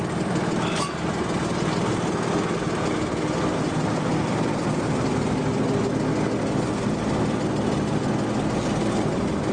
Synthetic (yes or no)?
no